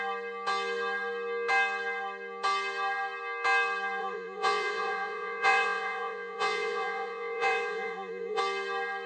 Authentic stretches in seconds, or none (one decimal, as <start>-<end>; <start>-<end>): 0.0-4.0; 8.4-9.1

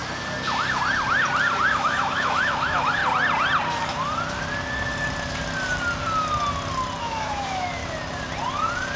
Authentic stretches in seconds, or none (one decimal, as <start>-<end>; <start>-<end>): 0.0-1.7; 3.0-7.0; 7.8-9.0

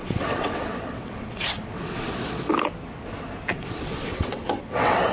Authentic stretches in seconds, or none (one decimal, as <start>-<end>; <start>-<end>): 2.5-3.5

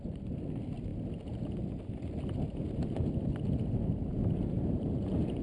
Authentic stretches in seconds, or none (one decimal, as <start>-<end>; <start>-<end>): 0.0-4.1

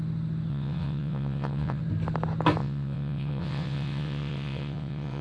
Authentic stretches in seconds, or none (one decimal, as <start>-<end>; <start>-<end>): 0.0-0.5; 1.8-2.6

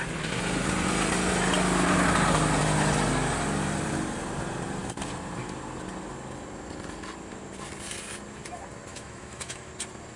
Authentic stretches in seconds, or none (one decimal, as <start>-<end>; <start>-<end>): 0.0-8.9; 9.7-10.2